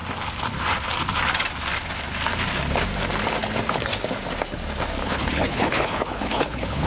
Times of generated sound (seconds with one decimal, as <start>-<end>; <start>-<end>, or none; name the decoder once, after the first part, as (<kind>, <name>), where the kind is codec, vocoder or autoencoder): 5.0-6.9 (codec, HILCodec)